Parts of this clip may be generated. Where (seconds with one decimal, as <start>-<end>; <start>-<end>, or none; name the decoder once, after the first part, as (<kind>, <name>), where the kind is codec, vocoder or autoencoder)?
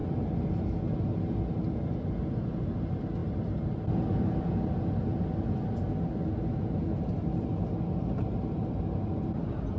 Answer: none